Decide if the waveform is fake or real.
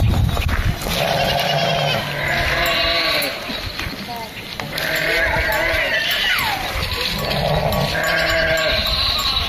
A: real